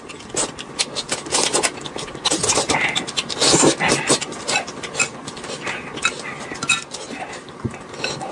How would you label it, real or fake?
real